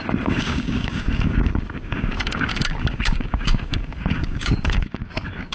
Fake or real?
fake